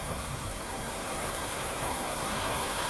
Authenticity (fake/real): fake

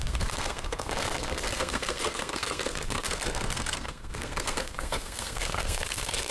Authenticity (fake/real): fake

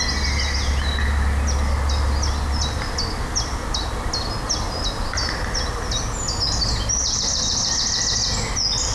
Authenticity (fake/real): real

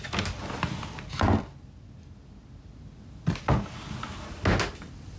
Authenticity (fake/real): real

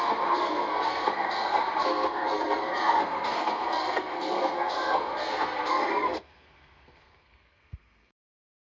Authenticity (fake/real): fake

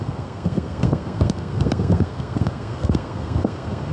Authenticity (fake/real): fake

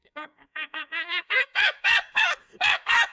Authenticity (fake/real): fake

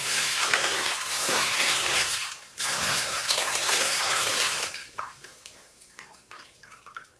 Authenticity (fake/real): fake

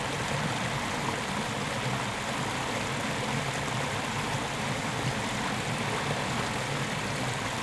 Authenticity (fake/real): real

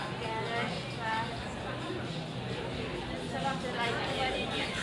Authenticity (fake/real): real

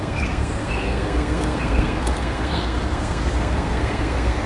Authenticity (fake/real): fake